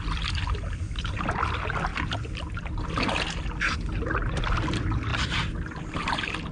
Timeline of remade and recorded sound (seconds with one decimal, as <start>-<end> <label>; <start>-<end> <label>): 0.0-6.5 recorded